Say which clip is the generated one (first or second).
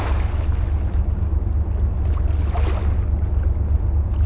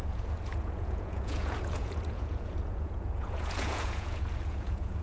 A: second